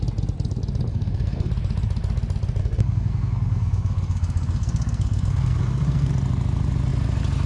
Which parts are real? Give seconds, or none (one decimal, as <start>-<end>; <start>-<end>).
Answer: 0.0-0.9; 1.5-2.6; 6.1-7.5